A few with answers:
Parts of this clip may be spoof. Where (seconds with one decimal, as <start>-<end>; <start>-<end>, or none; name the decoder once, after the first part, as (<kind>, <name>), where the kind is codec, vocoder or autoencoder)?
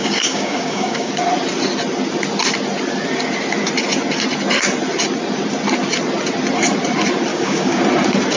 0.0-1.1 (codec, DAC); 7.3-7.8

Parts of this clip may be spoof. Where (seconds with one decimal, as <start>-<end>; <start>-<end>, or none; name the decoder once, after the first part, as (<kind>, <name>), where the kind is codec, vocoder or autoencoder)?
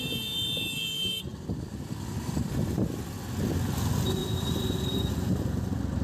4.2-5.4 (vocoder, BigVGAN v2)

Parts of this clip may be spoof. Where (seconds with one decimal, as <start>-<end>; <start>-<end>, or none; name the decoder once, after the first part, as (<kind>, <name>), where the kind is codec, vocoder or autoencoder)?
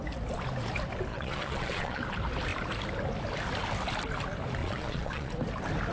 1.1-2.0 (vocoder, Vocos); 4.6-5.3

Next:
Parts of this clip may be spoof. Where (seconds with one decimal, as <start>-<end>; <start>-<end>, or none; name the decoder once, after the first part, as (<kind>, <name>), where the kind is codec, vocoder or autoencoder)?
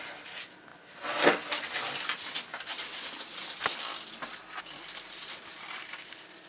none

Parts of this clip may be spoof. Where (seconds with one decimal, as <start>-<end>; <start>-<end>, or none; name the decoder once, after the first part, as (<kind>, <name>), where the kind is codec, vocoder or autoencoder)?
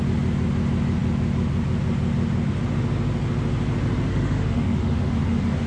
4.1-5.1 (autoencoder, DAC-VAE)